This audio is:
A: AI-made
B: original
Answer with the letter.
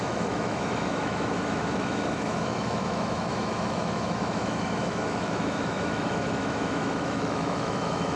A